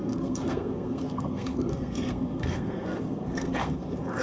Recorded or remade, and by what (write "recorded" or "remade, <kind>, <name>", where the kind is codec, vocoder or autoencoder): remade, codec, SNAC